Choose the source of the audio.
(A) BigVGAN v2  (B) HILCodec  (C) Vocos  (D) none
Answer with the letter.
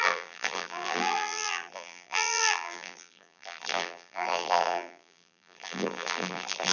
A